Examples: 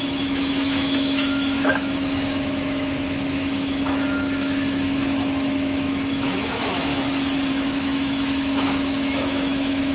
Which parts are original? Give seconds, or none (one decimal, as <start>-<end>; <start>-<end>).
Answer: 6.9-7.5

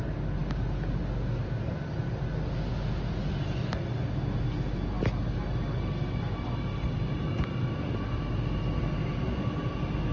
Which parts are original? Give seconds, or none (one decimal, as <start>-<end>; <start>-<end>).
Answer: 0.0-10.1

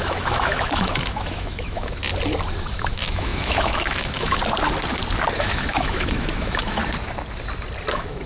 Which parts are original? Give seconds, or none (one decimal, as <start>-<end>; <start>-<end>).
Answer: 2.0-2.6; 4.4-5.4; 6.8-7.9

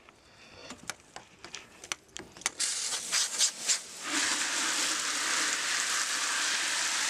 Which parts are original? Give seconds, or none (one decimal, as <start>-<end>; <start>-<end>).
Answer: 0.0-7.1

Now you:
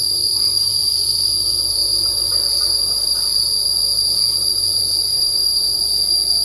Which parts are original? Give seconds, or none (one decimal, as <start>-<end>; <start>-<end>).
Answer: 0.0-5.1; 5.8-6.4

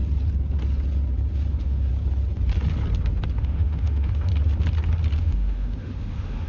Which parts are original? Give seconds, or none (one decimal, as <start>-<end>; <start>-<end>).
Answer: 0.0-1.5; 1.9-3.4; 4.3-5.2